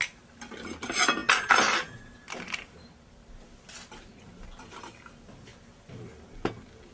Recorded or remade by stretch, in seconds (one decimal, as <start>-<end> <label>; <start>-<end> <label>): 0.0-6.9 recorded